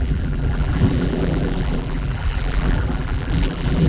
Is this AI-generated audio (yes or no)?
yes